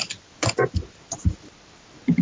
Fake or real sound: real